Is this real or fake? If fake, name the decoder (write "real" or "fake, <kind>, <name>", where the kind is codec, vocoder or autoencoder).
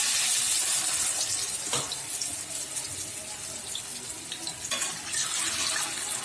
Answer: real